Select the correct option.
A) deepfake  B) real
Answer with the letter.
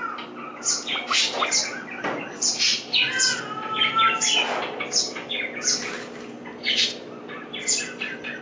B